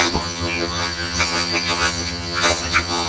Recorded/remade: remade